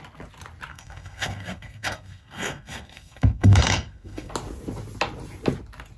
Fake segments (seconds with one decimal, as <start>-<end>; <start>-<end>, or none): 0.7-4.3